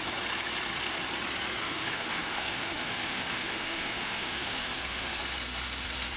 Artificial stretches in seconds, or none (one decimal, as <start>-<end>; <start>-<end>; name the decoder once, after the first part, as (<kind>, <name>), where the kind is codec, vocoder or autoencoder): 1.6-5.2 (autoencoder, DAC-VAE)